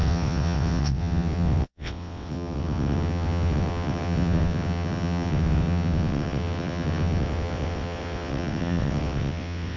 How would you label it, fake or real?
fake